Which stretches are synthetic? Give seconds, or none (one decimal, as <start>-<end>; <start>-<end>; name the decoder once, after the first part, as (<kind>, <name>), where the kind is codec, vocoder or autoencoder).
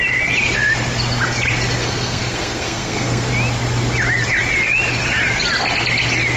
1.8-3.3 (codec, SNAC)